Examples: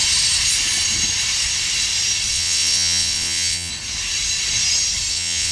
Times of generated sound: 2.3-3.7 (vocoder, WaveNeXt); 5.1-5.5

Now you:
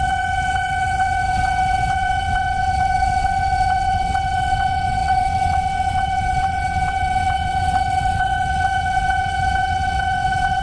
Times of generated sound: 0.0-10.6 (vocoder, WaveNeXt)

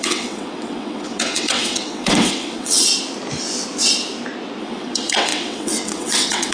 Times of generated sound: 0.0-2.9 (vocoder, WaveNeXt); 4.6-6.5

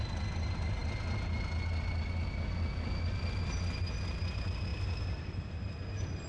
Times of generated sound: none

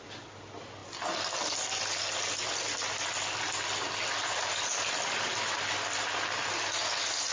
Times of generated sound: none

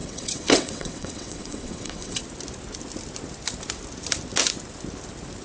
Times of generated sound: 0.0-2.2 (vocoder, WaveNeXt)

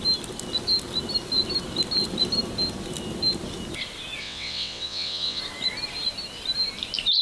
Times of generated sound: 4.2-5.4 (vocoder, WaveNeXt)